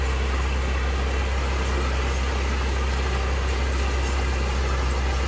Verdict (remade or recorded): recorded